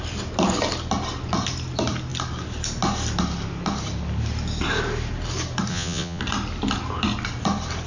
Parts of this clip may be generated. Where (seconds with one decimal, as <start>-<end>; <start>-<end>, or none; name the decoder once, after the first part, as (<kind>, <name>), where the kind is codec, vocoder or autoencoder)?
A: 5.7-6.2 (vocoder, Vocos)